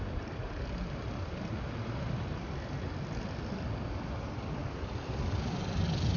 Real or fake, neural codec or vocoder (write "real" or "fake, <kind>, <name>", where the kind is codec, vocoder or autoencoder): real